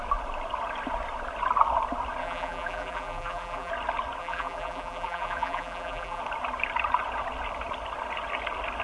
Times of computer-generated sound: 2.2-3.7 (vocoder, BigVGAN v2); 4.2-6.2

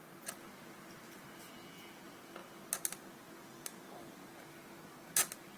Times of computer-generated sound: none

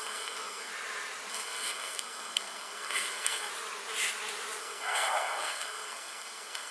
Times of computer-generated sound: 0.0-0.7 (codec, SNAC); 1.3-3.5; 4.6-6.7